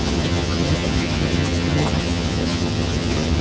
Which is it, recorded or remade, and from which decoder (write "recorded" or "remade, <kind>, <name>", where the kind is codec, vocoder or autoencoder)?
remade, vocoder, HiFi-GAN